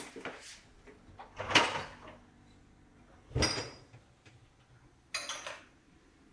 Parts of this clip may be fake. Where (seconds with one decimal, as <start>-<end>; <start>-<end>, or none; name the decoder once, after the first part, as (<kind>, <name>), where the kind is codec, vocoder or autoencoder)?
none